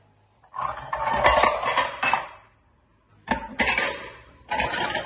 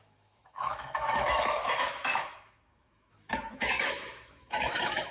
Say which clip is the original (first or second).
first